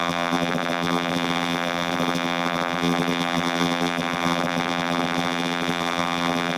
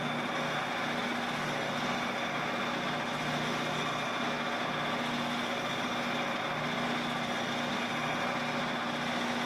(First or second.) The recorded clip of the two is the second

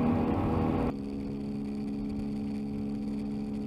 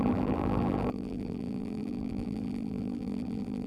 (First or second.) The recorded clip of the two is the first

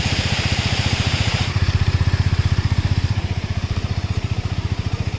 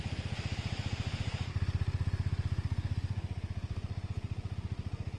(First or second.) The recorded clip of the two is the second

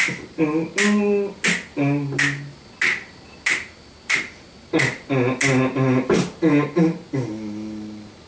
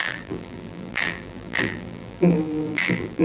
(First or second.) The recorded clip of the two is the first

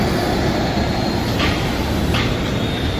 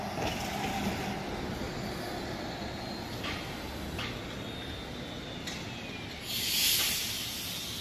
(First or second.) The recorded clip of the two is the second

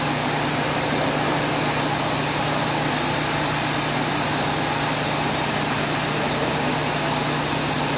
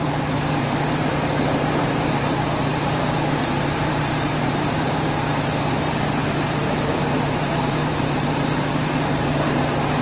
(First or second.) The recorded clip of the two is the first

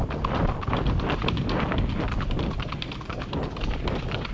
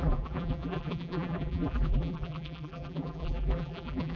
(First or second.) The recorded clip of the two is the first